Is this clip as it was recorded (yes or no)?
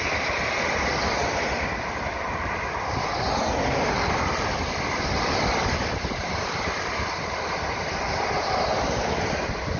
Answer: yes